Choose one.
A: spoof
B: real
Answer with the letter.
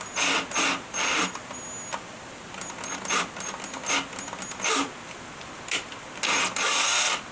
B